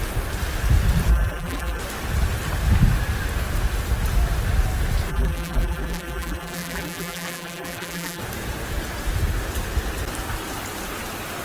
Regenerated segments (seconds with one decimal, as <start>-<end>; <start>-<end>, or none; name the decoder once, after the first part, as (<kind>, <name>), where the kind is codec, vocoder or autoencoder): 1.1-1.8 (vocoder, BigVGAN v2); 5.1-8.2

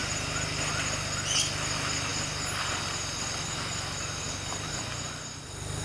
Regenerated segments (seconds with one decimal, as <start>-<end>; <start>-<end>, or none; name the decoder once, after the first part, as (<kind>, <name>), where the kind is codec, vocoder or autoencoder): none

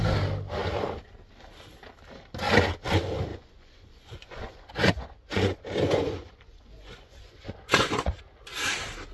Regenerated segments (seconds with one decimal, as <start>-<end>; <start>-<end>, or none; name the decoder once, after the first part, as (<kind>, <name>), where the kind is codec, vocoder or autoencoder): 3.3-8.2 (vocoder, Vocos)

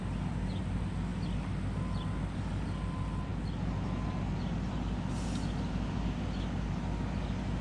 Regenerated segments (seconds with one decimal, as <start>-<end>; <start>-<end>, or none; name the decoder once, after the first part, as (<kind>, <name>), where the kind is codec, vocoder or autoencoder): none

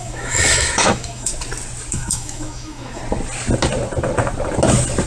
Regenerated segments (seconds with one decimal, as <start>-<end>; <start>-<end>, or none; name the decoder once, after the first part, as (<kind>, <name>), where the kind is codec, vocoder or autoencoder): 0.0-1.3 (autoencoder, DAC-VAE); 1.9-3.0

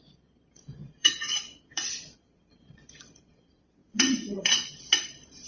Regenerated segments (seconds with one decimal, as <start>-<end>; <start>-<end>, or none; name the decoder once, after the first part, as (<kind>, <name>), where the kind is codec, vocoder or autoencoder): 0.0-5.5 (vocoder, Vocos)

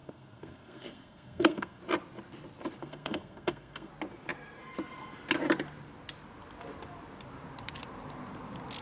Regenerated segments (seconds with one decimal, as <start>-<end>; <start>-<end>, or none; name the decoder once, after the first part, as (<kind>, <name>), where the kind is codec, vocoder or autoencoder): 0.0-1.8 (codec, SNAC); 2.8-3.9